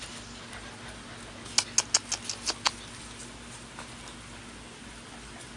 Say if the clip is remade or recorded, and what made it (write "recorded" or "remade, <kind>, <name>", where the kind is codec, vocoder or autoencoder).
recorded